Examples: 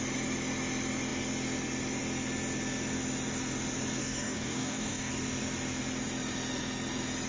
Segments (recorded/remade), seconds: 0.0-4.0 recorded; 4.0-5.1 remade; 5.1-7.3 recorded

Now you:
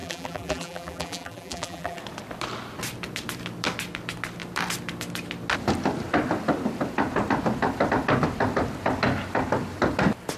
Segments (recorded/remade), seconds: 0.0-2.0 remade; 2.0-10.4 recorded

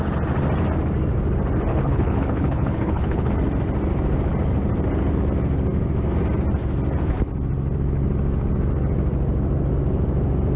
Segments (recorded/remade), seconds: 0.0-1.7 recorded; 1.7-3.3 remade; 3.3-10.6 recorded

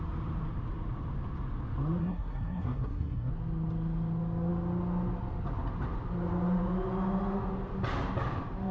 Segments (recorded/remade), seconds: 0.0-2.0 recorded; 2.0-3.3 remade; 3.3-8.7 recorded